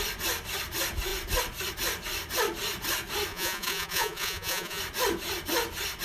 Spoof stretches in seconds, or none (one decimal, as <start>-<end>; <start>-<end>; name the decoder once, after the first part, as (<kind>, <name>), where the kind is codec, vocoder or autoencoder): 3.3-4.8 (vocoder, Vocos)